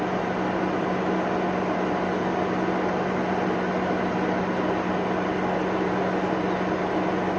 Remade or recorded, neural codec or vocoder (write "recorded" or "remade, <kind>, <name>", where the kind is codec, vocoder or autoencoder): recorded